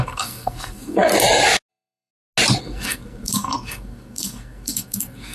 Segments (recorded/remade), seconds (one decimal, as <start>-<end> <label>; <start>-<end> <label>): 0.0-1.1 remade; 1.1-1.7 recorded; 1.7-2.1 remade; 2.1-2.6 recorded; 2.6-5.3 remade